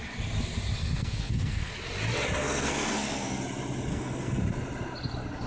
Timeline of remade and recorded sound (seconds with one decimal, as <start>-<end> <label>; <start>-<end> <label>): 0.0-0.8 recorded; 0.8-1.7 remade; 1.7-2.4 recorded; 2.4-3.4 remade; 3.4-3.9 recorded; 3.9-4.4 remade; 4.4-5.5 recorded